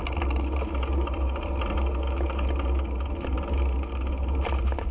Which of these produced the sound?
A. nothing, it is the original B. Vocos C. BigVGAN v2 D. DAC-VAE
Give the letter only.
A